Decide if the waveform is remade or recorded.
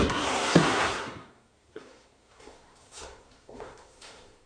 remade